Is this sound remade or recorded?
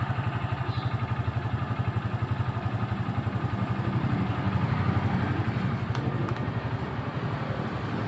recorded